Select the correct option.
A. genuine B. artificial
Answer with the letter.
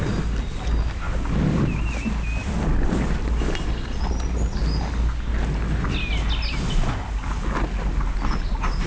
A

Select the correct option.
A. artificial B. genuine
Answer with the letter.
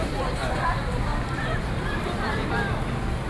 A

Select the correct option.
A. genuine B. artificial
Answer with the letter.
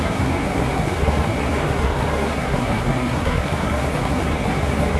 B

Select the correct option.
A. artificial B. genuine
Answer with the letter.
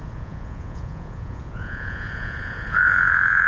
A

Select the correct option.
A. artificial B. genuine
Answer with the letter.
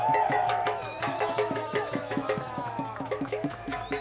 A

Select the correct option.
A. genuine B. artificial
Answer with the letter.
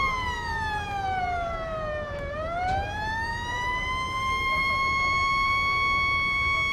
B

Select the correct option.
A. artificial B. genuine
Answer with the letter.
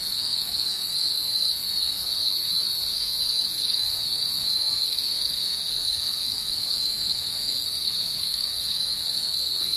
A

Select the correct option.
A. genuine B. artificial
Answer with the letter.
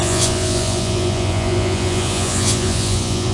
B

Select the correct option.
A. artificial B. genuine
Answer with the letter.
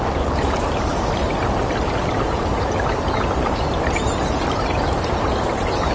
B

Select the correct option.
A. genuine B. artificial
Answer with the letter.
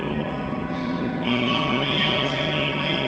B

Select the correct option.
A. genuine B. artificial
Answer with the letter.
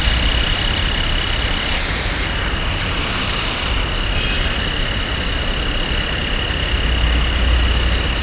A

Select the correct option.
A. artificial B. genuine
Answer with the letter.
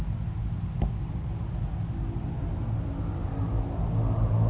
B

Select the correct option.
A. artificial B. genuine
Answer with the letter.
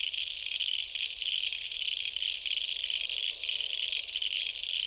B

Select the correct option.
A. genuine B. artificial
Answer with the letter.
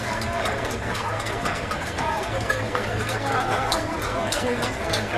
B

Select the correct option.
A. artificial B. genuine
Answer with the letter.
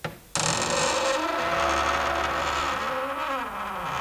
B